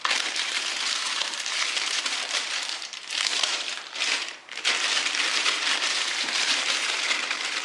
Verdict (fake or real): fake